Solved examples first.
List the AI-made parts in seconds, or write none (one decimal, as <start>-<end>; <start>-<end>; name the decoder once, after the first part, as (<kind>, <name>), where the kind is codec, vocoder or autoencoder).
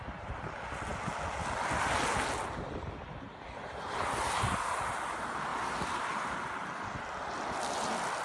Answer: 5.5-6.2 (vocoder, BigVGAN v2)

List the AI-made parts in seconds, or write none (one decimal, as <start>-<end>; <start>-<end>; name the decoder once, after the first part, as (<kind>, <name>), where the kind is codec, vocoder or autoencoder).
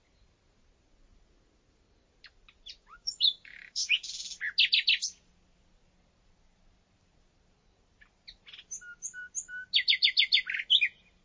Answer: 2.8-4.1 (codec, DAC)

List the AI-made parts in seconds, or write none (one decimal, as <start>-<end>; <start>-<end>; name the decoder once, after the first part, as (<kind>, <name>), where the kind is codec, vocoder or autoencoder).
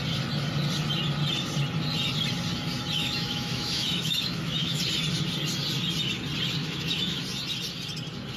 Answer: 3.0-4.8 (autoencoder, DAC-VAE); 6.6-7.2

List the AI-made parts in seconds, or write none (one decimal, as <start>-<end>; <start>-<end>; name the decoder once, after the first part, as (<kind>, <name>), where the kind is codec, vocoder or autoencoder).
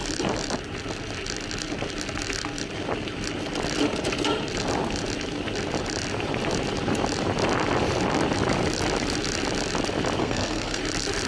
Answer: 10.2-10.8 (codec, SNAC)